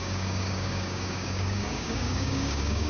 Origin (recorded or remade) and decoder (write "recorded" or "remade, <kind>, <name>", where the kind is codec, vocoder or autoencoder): remade, codec, DAC